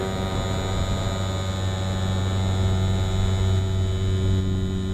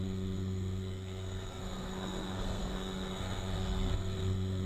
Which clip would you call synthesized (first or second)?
second